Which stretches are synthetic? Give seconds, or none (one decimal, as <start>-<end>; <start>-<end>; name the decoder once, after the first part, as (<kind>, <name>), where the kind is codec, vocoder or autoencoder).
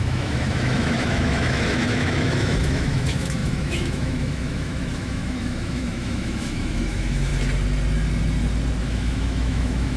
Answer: 0.0-7.3 (autoencoder, DAC-VAE); 8.8-10.0